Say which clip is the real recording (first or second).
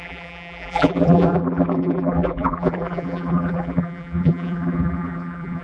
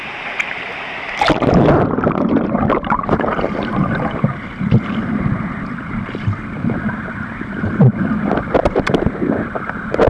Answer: second